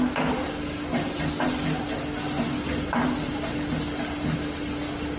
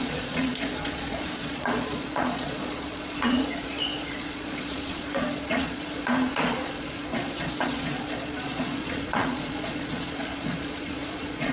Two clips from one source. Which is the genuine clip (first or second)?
first